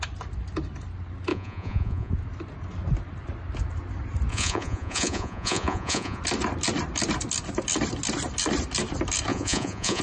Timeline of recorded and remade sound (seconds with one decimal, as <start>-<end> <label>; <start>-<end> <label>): 0.0-1.3 recorded; 1.3-2.1 remade; 2.1-4.3 recorded; 4.3-6.2 remade; 6.2-9.3 recorded; 9.3-10.0 remade